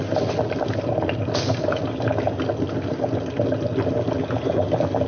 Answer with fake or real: real